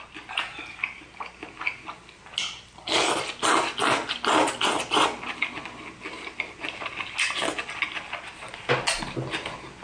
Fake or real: real